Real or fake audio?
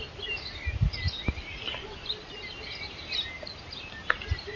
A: real